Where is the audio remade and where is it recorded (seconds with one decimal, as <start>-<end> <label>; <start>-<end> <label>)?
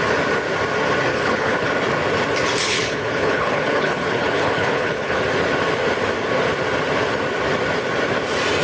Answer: 0.0-1.1 recorded; 1.1-1.7 remade; 1.7-2.7 recorded; 2.7-5.2 remade; 5.2-8.6 recorded